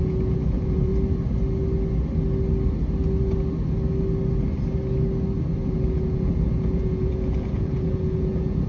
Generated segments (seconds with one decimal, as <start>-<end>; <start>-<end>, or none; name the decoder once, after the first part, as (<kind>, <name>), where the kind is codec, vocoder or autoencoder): 0.0-0.9 (vocoder, Vocos); 5.7-8.7